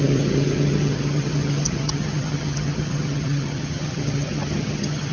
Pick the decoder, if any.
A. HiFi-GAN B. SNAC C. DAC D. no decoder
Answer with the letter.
A